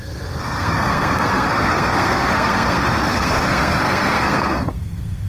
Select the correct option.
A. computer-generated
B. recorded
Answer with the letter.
A